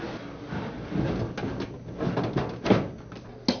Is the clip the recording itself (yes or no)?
yes